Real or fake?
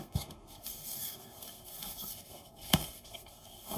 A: fake